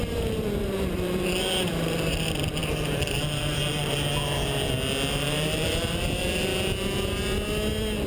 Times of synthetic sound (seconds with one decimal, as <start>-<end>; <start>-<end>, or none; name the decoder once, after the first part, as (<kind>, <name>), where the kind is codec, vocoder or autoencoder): 0.0-3.8 (vocoder, BigVGAN v2); 5.1-6.5